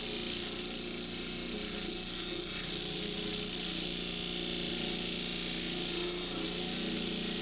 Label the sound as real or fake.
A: real